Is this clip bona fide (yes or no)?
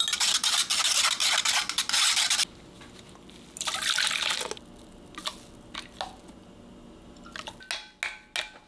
yes